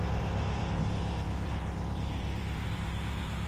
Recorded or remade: remade